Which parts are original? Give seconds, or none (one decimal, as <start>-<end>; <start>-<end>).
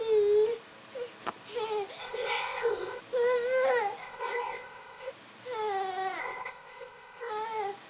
0.0-2.0; 3.0-4.0; 5.1-6.2; 7.3-7.9